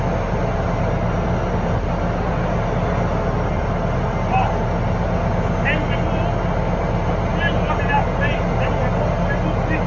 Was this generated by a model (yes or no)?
no